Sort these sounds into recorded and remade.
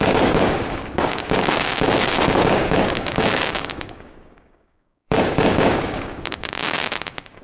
remade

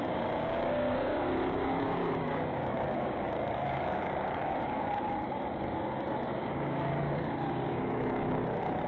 remade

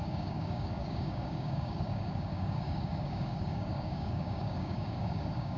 remade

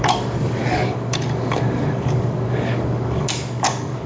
remade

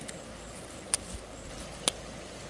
recorded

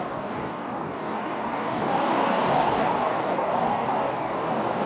remade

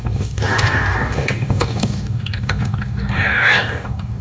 remade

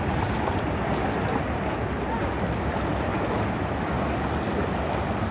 recorded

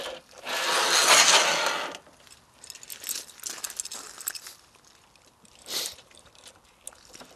recorded